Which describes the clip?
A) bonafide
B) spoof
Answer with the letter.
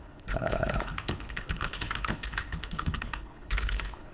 B